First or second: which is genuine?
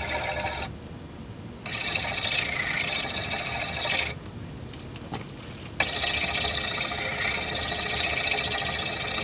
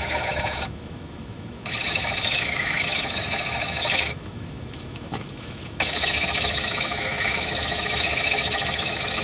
first